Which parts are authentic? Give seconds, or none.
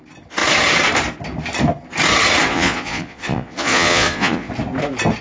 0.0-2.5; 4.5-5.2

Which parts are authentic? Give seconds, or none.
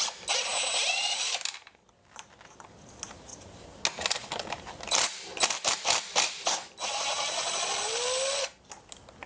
0.0-0.5; 1.9-3.3; 3.8-4.2; 8.7-9.3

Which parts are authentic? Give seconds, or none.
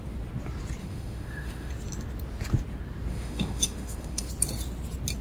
0.0-0.8; 1.7-3.1; 4.3-5.2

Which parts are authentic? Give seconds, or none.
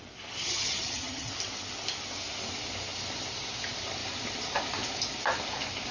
0.0-0.4; 1.3-5.9